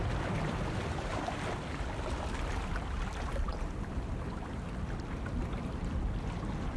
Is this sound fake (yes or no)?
no